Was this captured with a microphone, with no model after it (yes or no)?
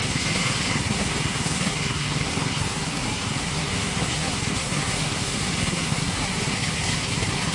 no